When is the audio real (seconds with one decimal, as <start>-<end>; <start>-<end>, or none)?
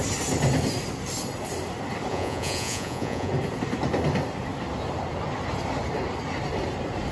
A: 0.0-2.1; 3.3-7.1